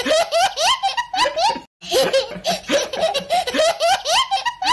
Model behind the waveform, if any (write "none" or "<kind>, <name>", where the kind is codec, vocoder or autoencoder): none